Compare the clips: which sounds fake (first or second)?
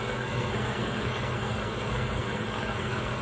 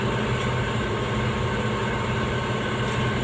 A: first